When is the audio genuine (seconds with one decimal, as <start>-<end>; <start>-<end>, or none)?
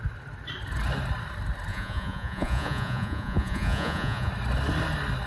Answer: 0.0-1.7; 4.3-5.3